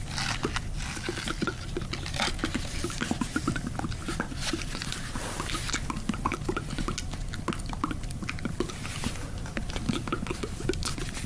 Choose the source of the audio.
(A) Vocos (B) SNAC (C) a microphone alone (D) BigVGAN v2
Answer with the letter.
C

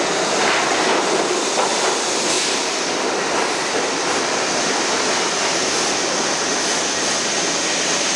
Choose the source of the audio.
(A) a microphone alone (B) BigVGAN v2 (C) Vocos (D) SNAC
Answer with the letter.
A